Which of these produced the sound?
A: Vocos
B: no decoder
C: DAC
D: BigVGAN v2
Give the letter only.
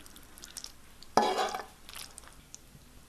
B